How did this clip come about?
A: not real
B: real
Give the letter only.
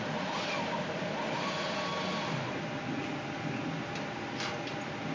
B